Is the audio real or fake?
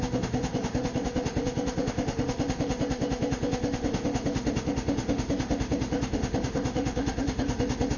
fake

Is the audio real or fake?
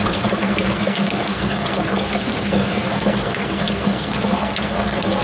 fake